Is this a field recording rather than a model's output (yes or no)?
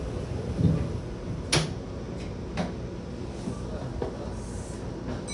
yes